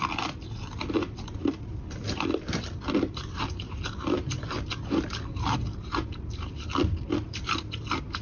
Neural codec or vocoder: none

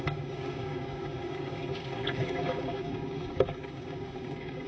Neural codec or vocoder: codec, DAC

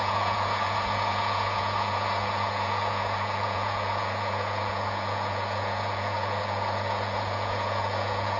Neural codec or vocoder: vocoder, Vocos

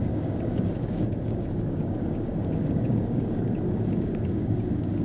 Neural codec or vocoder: codec, DAC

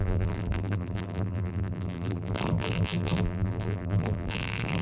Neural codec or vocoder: vocoder, BigVGAN v2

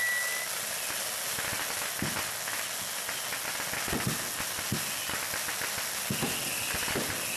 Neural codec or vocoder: none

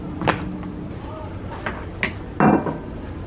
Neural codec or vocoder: none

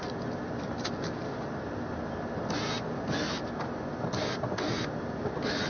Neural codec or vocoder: none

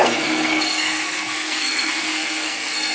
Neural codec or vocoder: codec, SNAC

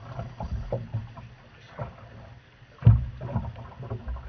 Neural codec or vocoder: none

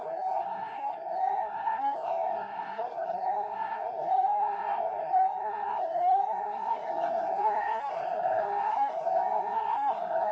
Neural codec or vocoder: codec, SNAC